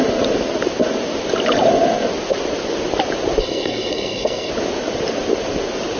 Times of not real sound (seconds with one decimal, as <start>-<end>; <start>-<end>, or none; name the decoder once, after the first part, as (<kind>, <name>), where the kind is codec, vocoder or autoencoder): 3.4-4.5 (codec, SNAC)